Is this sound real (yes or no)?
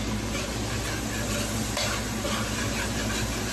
yes